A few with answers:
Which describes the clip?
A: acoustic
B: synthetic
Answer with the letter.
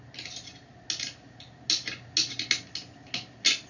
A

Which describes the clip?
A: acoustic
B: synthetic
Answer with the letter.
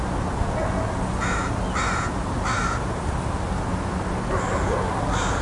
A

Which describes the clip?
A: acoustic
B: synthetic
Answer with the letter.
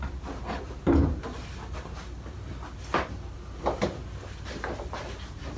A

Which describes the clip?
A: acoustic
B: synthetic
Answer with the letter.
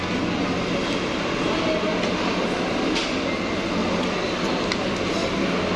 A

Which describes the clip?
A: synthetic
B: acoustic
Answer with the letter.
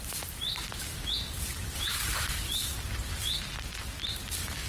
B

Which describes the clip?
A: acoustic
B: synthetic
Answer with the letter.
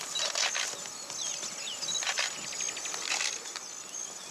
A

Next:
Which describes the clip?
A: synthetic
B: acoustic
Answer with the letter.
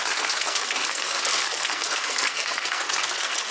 A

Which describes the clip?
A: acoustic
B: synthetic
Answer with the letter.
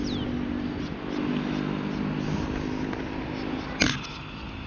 A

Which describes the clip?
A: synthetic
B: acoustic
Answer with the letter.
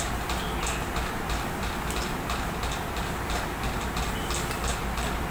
B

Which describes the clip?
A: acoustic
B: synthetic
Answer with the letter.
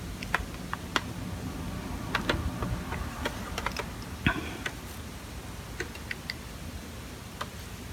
A